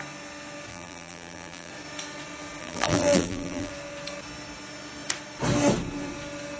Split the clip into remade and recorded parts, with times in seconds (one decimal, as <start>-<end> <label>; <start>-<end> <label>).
0.0-0.7 recorded; 0.7-1.7 remade; 1.7-2.6 recorded; 2.6-3.7 remade; 3.7-6.6 recorded